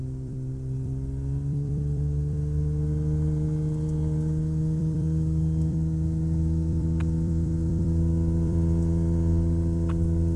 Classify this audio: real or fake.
fake